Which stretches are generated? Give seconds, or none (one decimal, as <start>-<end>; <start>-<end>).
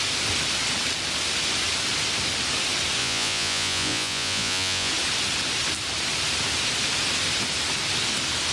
3.0-4.9